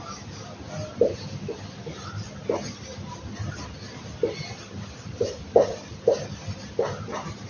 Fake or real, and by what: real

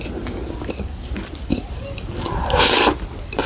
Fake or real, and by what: real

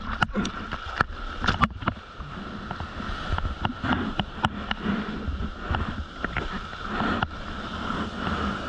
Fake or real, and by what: real